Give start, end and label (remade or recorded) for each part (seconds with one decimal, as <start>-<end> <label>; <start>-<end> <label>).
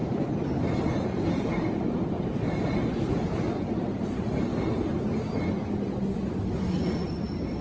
0.0-1.2 recorded; 1.2-4.5 remade; 4.5-7.6 recorded